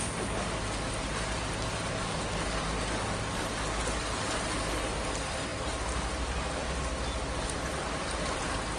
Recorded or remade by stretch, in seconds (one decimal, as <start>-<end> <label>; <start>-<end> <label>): 0.0-8.8 recorded